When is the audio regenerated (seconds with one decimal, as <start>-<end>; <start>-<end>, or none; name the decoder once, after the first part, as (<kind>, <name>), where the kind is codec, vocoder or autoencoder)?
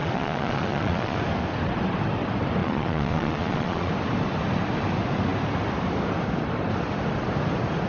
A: 0.0-1.2 (vocoder, Vocos); 2.6-3.9